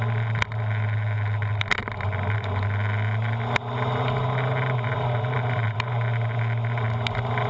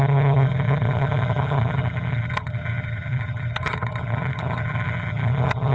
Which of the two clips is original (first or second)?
first